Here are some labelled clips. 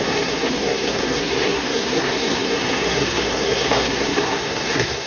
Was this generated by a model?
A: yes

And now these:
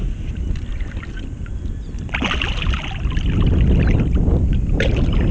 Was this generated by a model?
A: no